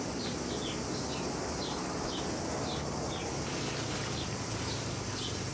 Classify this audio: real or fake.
real